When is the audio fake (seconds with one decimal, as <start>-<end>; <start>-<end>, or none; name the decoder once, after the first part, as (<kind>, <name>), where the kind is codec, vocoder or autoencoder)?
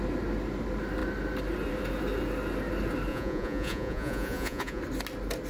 3.1-4.8 (vocoder, Vocos)